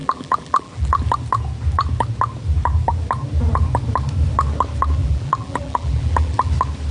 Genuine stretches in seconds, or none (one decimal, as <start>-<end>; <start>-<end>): 1.0-5.0; 6.5-6.9